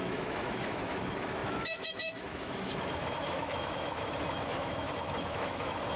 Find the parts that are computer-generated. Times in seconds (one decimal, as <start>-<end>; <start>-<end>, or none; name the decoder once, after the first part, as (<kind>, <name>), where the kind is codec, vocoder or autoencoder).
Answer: 0.0-6.0 (autoencoder, DAC-VAE)